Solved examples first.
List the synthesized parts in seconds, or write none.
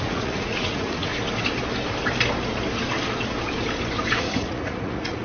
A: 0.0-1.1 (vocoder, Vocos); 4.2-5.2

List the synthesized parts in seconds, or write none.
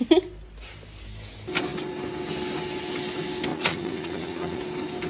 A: 3.5-4.6 (vocoder, Vocos)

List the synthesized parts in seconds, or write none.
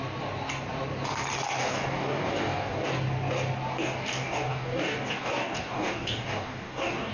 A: 1.6-2.9 (codec, DAC); 3.7-7.1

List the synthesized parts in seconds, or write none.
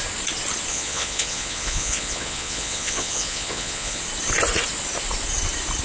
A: 0.7-4.0 (vocoder, Vocos)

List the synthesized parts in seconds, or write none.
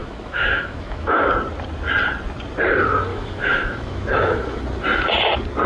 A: 0.0-1.3 (autoencoder, DAC-VAE); 3.1-4.6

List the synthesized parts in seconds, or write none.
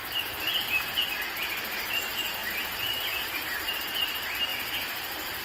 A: 4.5-5.4 (vocoder, BigVGAN v2)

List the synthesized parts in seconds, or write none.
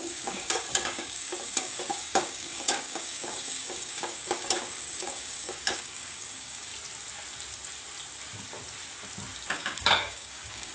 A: 0.0-6.7 (codec, DAC); 9.5-10.7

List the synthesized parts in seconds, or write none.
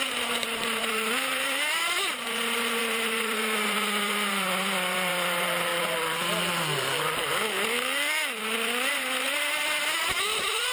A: 0.0-5.7 (vocoder, BigVGAN v2); 8.9-10.7